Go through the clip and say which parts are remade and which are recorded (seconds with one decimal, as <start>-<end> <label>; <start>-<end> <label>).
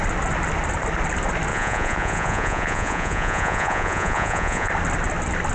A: 0.0-1.5 recorded; 1.5-4.7 remade; 4.7-5.5 recorded